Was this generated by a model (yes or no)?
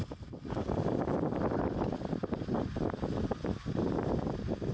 no